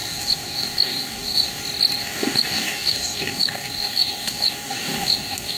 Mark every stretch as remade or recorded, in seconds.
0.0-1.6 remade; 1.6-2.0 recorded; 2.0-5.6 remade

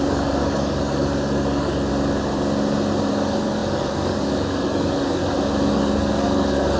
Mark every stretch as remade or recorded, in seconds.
0.0-1.9 remade; 1.9-3.1 recorded; 3.1-5.2 remade; 5.2-5.7 recorded; 5.7-6.8 remade

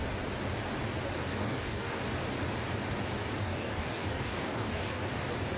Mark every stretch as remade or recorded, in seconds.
0.0-1.4 recorded; 1.4-2.0 remade; 2.0-3.4 recorded; 3.4-5.0 remade; 5.0-5.6 recorded

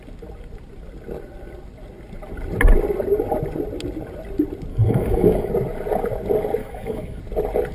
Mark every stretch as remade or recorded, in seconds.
0.0-4.7 recorded; 4.7-5.5 remade; 5.5-6.6 recorded; 6.6-7.2 remade; 7.2-7.7 recorded

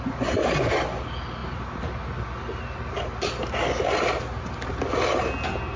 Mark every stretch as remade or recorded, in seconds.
0.0-5.8 recorded

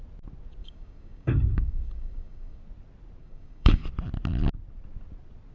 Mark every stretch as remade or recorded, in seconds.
0.0-0.6 recorded; 0.6-2.6 remade; 2.6-3.2 recorded; 3.2-3.8 remade; 3.8-5.5 recorded

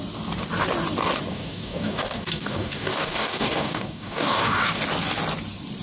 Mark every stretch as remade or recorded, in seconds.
0.0-1.3 recorded; 1.3-4.8 remade; 4.8-5.8 recorded